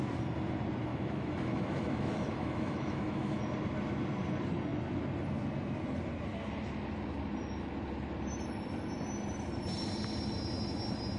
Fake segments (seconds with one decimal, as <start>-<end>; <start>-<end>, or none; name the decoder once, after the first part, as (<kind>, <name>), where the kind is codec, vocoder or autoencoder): 0.9-3.4 (autoencoder, DAC-VAE)